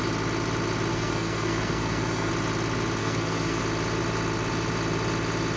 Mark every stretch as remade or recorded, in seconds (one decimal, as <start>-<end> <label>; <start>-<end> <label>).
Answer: 0.0-0.9 recorded; 0.9-2.3 remade; 2.3-3.0 recorded; 3.0-3.6 remade; 3.6-5.6 recorded